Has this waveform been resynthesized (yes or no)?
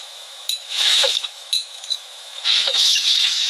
yes